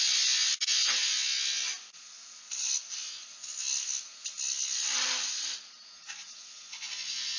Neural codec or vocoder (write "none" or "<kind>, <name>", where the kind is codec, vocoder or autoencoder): none